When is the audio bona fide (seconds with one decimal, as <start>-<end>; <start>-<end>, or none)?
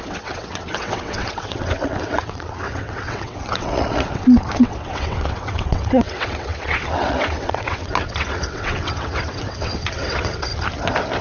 10.5-11.2